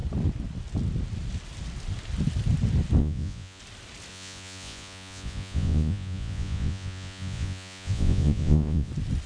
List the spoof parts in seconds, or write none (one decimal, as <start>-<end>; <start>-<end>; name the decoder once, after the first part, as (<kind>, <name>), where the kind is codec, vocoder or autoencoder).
3.0-3.6 (vocoder, Vocos); 4.1-8.9